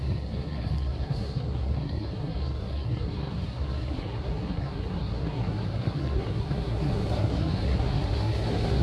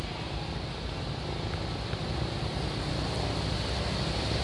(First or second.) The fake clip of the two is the first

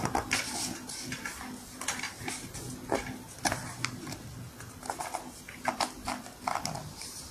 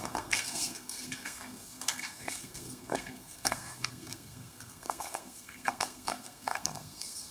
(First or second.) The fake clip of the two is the second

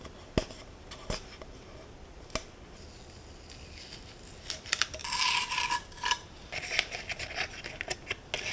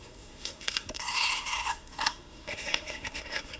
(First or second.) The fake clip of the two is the second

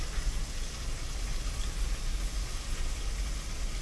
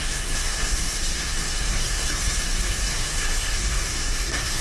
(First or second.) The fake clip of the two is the second